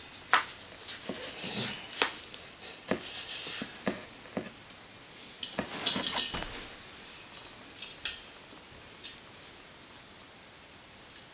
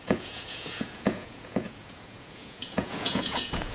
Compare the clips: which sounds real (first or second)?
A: first